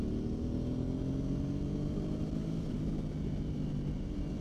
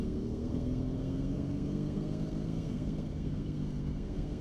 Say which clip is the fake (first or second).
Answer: second